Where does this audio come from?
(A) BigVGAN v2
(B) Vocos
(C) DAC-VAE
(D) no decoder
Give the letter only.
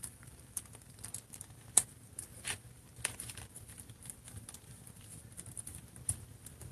A